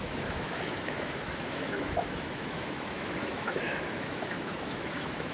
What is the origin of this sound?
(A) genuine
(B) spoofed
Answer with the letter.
B